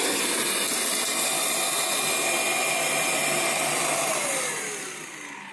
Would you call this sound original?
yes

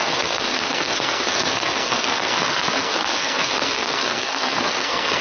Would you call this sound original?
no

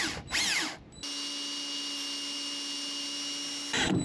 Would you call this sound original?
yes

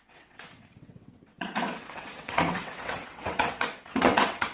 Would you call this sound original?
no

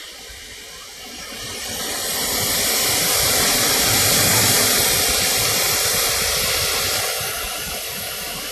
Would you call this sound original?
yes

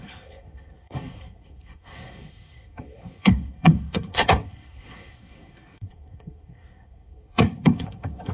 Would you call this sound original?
no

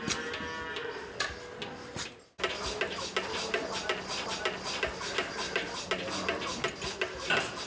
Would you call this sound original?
yes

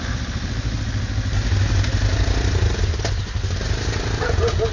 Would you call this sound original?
yes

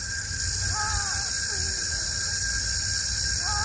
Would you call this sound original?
yes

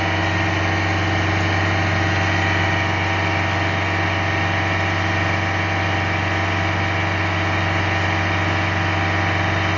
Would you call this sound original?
yes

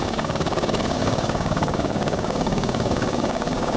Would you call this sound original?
no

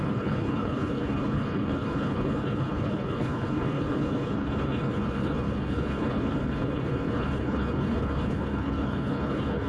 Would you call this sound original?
no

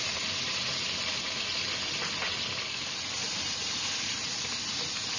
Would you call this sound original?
yes